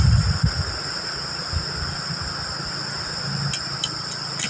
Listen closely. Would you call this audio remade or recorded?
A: recorded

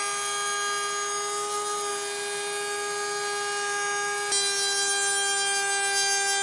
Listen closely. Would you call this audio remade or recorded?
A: recorded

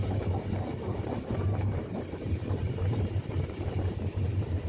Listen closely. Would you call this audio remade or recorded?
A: remade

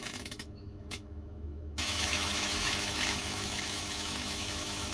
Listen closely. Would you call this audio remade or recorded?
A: remade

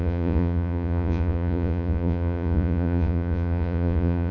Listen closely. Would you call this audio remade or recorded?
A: remade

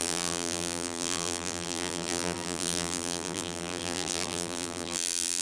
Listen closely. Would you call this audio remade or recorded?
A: remade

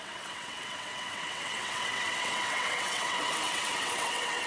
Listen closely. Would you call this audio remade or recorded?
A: remade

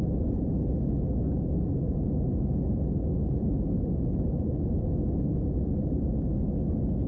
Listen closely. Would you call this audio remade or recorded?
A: recorded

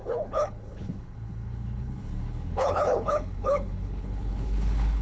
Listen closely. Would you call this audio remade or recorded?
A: remade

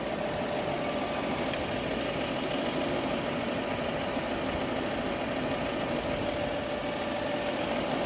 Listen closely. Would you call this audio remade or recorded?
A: recorded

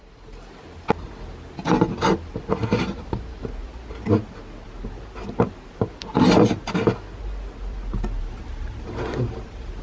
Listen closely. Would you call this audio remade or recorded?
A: recorded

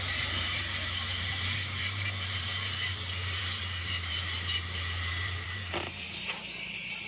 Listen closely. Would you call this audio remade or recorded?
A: remade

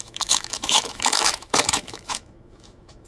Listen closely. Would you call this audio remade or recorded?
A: remade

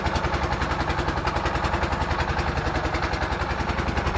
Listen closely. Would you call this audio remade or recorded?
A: recorded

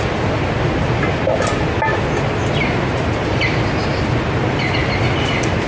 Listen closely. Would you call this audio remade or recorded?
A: recorded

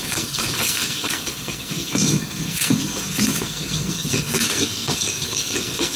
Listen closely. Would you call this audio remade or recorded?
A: remade